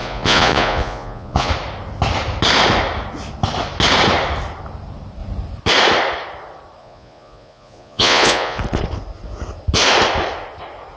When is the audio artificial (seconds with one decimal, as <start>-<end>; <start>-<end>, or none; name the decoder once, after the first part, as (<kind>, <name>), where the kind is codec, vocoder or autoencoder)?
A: 0.0-1.5 (vocoder, Vocos); 6.8-8.6